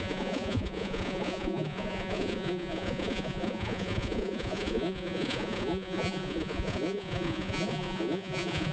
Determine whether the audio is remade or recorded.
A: remade